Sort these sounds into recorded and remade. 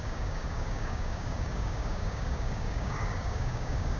remade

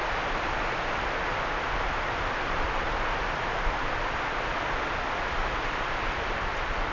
recorded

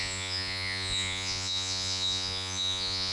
remade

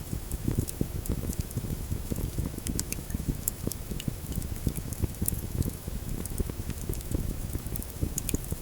remade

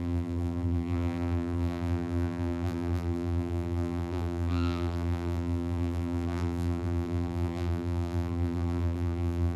remade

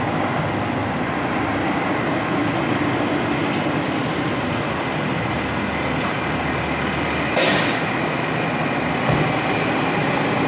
recorded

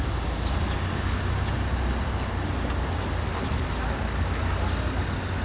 recorded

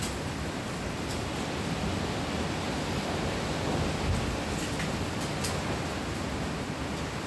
recorded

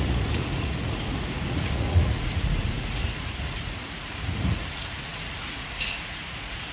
remade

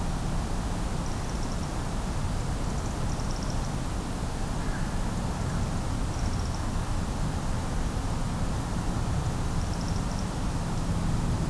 recorded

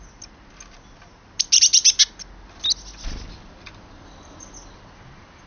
recorded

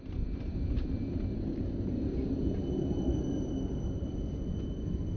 recorded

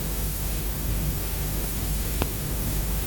remade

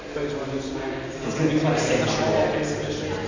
recorded